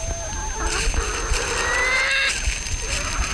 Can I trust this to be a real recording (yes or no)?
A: yes